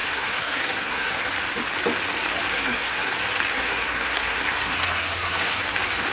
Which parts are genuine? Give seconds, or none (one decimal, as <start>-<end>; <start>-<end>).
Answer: 1.2-2.5; 3.1-3.5; 5.6-6.1